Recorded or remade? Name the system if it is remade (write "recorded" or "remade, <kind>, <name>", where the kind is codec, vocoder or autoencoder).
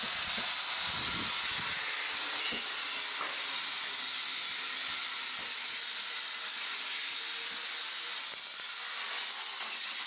recorded